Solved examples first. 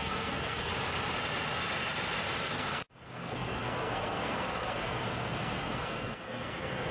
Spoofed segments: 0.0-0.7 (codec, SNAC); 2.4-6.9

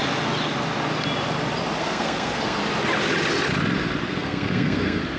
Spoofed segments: 1.8-2.6 (codec, SNAC); 4.0-5.2

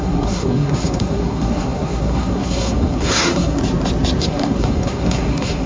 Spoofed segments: 0.0-3.6 (codec, SNAC); 4.2-5.7